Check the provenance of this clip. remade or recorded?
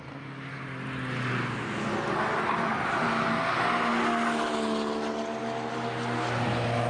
recorded